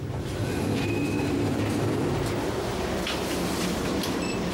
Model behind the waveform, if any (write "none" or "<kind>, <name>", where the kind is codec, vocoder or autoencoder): vocoder, BigVGAN v2